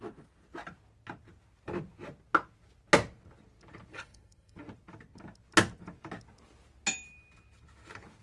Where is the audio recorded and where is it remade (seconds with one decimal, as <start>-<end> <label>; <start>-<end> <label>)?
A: 0.0-3.9 recorded; 3.9-4.6 remade; 4.6-8.2 recorded